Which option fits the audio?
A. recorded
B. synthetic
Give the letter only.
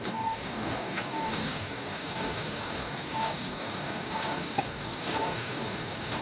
B